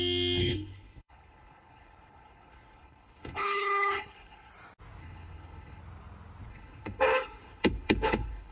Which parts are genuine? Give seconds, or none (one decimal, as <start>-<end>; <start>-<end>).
0.0-0.4; 4.5-5.0; 5.8-6.5